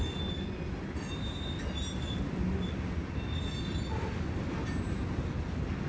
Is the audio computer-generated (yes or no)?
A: no